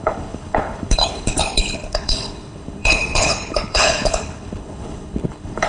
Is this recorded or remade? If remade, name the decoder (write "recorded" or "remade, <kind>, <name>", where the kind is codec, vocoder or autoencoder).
remade, codec, HILCodec